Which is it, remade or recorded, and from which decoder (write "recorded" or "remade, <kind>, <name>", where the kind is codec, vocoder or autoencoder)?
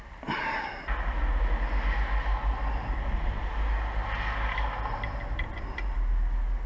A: recorded